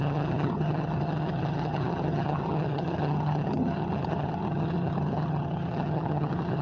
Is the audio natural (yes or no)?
no